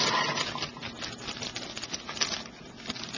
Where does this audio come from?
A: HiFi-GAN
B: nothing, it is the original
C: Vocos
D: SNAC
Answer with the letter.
B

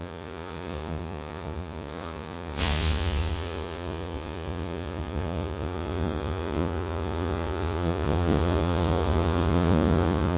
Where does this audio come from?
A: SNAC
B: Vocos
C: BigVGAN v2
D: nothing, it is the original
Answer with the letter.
B